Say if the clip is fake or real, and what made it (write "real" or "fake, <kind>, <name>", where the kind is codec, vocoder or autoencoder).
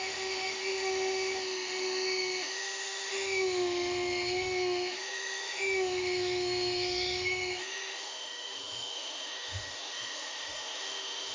fake, autoencoder, DAC-VAE